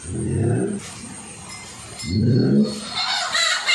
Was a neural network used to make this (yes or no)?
no